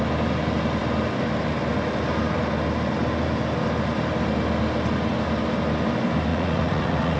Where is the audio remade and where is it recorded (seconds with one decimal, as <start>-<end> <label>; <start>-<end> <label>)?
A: 0.0-6.3 recorded; 6.3-7.2 remade